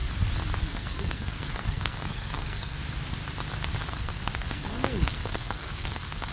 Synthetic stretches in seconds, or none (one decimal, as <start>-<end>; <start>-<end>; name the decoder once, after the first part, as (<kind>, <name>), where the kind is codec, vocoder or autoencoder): 0.6-2.8 (codec, SNAC); 3.9-6.3